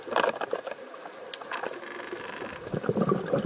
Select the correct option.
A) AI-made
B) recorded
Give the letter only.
B